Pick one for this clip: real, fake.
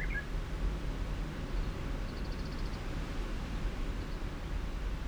real